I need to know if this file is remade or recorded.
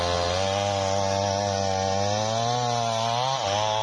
recorded